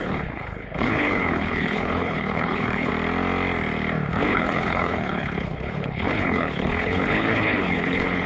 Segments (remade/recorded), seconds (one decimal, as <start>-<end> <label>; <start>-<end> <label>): 0.0-2.9 remade; 2.9-4.1 recorded; 4.1-8.3 remade